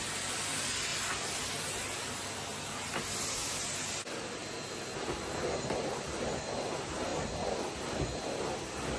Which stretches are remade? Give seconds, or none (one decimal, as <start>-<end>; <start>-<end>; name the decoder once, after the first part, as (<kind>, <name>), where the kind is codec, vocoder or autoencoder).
0.9-1.5 (vocoder, BigVGAN v2)